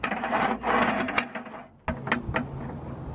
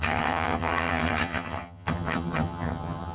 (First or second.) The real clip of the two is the first